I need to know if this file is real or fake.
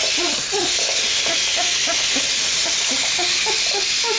real